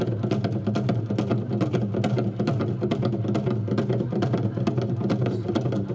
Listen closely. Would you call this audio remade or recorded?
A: recorded